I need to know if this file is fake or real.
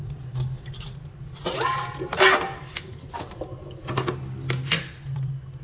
real